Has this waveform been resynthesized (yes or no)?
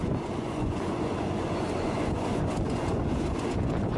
yes